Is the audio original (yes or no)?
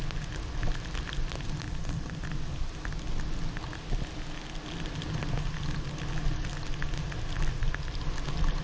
yes